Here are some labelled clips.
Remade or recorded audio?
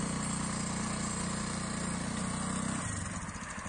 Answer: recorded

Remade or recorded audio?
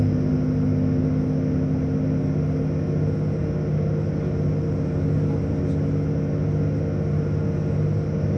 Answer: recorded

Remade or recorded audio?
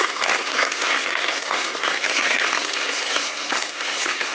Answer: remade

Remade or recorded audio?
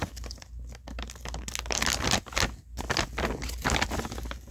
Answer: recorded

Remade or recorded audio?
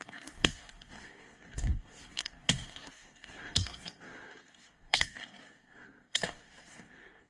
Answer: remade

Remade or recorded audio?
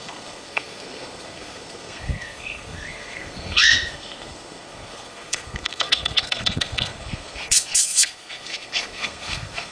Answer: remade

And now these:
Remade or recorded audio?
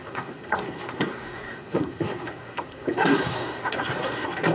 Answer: remade